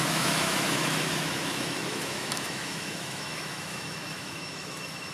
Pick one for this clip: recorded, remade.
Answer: remade